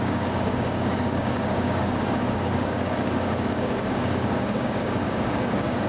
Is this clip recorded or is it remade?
remade